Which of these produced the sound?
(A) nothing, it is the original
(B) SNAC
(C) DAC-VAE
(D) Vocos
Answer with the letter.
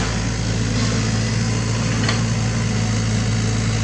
A